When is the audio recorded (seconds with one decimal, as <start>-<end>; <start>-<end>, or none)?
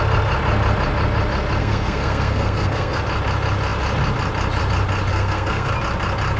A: 0.0-1.6; 3.0-5.1; 5.7-6.4